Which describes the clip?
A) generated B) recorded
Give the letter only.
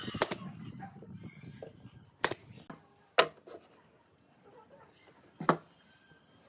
B